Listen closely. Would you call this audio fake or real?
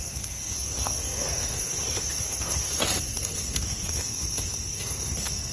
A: fake